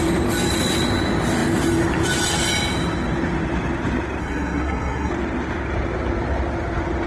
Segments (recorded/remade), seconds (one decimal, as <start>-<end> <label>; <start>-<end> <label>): 0.0-4.2 recorded; 4.2-5.1 remade; 5.1-7.1 recorded